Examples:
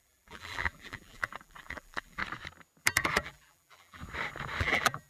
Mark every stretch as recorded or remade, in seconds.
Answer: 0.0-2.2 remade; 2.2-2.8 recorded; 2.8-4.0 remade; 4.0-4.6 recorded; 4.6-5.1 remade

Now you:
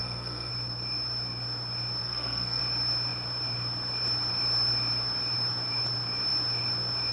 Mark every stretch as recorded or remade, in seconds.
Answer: 0.0-0.5 remade; 0.5-2.0 recorded; 2.0-2.6 remade; 2.6-7.1 recorded

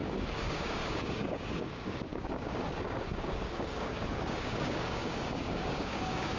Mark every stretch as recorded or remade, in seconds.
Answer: 0.0-6.4 remade

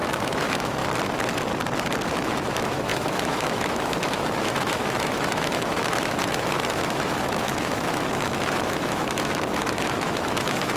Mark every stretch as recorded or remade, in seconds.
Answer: 0.0-0.8 remade; 0.8-2.2 recorded; 2.2-10.8 remade

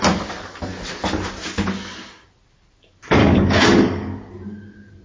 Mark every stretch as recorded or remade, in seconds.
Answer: 0.0-3.2 recorded; 3.2-4.3 remade; 4.3-5.0 recorded

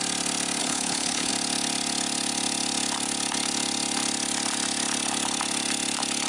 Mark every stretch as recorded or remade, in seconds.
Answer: 0.0-0.6 recorded; 0.6-1.3 remade; 1.3-6.3 recorded